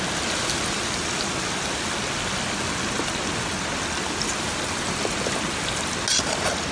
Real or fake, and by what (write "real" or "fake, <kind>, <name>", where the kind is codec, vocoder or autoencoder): real